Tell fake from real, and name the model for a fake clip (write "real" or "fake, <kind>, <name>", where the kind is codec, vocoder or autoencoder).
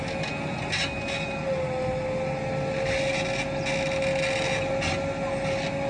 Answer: real